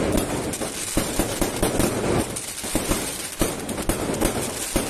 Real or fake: real